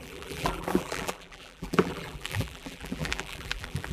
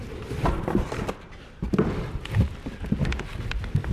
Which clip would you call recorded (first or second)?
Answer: second